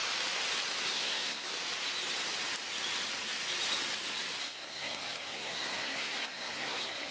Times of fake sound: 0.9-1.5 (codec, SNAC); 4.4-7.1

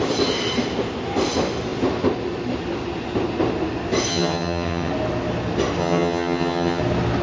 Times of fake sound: 4.1-4.9 (vocoder, HiFi-GAN); 5.8-6.8

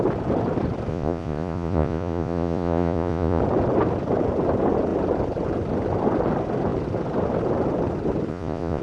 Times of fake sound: 0.9-3.4 (vocoder, Vocos); 8.3-8.8

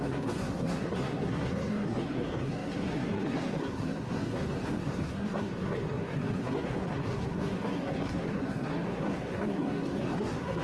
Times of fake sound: 0.0-10.6 (codec, SNAC)

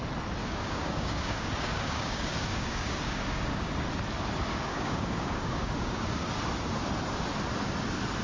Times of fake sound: 0.4-3.7 (codec, DAC); 4.5-6.3

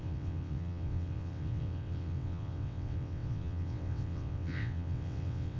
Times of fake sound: 0.0-5.6 (vocoder, WaveNeXt)

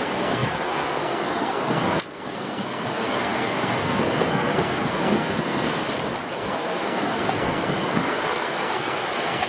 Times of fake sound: 0.0-5.8 (codec, SNAC); 6.3-9.5